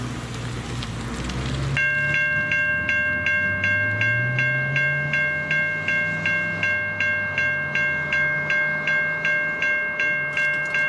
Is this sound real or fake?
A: real